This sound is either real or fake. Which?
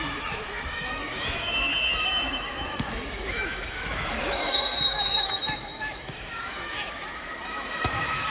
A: fake